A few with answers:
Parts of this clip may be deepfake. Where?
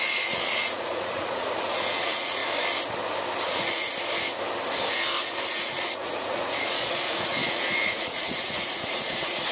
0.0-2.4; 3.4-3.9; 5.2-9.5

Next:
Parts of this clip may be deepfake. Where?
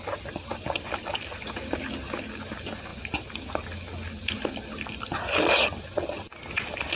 none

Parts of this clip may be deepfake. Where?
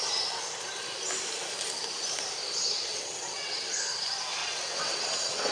2.9-3.6; 4.4-5.5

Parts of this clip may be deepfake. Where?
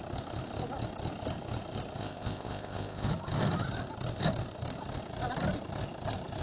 2.0-3.1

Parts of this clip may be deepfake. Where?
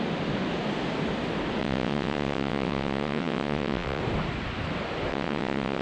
1.6-4.0; 5.1-5.8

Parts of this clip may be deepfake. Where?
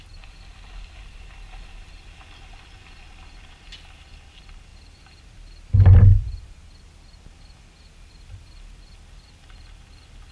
none